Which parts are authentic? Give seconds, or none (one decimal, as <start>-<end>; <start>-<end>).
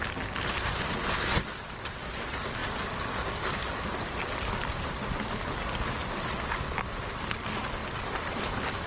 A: 0.0-7.8; 8.4-8.9